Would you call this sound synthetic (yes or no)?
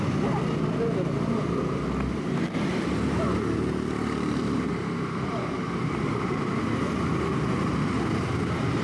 no